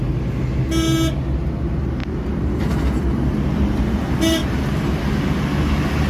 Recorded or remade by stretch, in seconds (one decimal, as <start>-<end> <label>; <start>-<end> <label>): 0.0-6.1 recorded